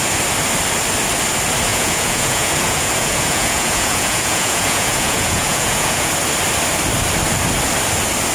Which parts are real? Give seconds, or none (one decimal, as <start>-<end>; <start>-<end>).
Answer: 0.0-1.7; 6.1-8.3

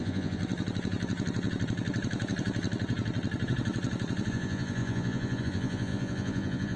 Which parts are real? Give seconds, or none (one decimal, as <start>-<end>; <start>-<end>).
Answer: 0.4-4.3